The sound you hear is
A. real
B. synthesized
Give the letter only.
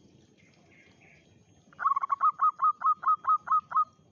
A